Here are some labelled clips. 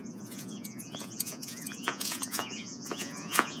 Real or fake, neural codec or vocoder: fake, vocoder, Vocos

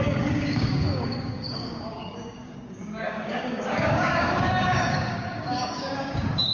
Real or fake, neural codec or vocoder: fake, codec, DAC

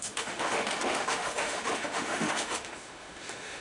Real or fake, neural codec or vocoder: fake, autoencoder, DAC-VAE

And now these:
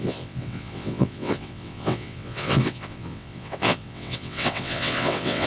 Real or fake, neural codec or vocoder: fake, vocoder, WaveNeXt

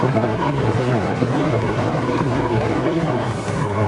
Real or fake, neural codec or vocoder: fake, codec, SNAC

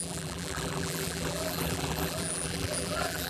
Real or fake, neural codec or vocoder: fake, vocoder, BigVGAN v2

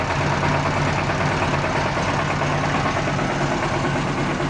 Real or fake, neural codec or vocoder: real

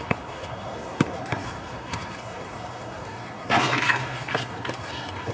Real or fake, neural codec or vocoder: fake, codec, SNAC